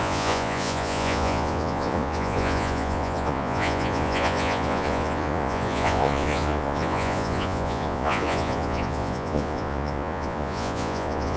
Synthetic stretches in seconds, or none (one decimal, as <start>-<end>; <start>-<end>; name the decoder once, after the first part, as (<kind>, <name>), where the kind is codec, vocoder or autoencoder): 0.0-11.4 (vocoder, Vocos)